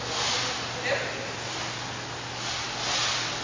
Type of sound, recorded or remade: recorded